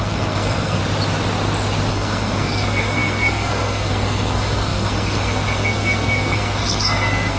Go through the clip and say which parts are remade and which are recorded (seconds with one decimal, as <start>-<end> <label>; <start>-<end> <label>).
0.0-0.8 remade; 0.8-1.9 recorded; 1.9-7.4 remade